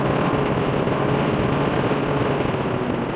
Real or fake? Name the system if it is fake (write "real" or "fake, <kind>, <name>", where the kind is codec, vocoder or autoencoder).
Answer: real